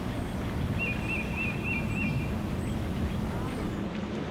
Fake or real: real